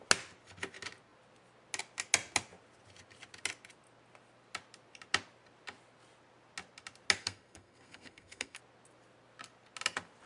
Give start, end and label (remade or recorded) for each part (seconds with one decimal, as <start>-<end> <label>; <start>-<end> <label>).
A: 0.0-7.2 recorded; 7.2-8.6 remade; 8.6-10.3 recorded

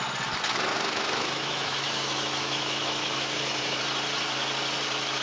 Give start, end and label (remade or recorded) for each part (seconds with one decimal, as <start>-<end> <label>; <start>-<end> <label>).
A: 0.0-0.7 recorded; 0.7-3.8 remade; 3.8-5.2 recorded

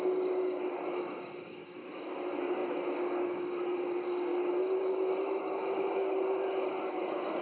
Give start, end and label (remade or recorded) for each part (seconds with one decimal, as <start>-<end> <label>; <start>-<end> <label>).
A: 0.0-7.4 remade

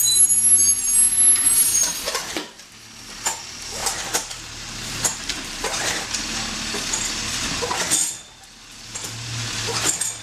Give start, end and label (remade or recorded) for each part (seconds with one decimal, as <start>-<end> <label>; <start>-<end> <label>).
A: 0.0-1.7 recorded; 1.7-2.7 remade; 2.7-3.8 recorded; 3.8-5.9 remade; 5.9-10.2 recorded

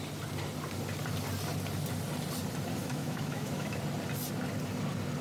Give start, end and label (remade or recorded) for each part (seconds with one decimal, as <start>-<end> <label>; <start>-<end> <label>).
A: 0.0-2.8 recorded; 2.8-3.8 remade; 3.8-5.2 recorded

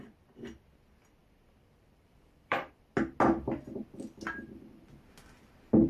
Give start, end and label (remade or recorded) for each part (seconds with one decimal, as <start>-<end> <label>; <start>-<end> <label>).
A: 0.0-1.2 recorded; 1.2-2.9 remade; 2.9-5.9 recorded